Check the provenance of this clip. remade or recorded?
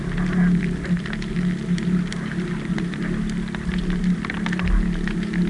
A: recorded